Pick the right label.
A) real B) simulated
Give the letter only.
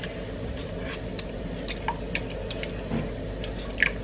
A